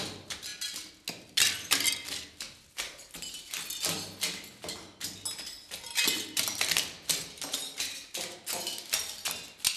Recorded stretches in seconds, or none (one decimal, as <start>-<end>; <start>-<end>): 0.0-9.8